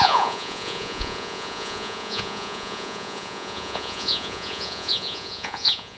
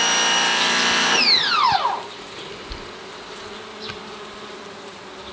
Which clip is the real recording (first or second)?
second